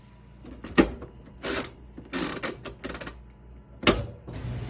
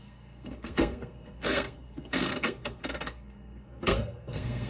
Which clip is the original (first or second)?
first